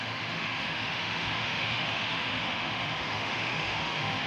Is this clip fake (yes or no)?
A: yes